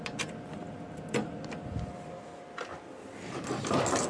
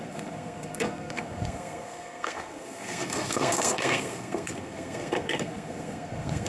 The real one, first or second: first